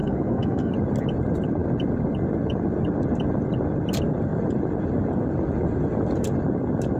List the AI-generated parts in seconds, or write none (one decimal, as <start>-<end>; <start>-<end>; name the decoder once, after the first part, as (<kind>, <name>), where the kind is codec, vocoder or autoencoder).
0.0-0.7 (codec, SNAC)